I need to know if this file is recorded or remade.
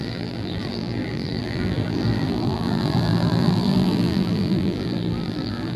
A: remade